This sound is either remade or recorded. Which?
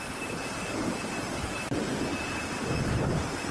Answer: recorded